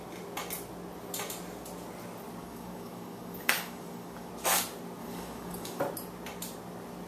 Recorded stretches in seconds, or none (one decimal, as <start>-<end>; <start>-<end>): 0.0-2.4; 4.3-5.0; 5.8-7.1